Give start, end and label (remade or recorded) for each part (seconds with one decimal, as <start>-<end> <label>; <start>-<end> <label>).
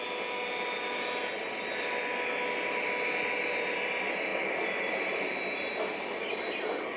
0.0-7.0 recorded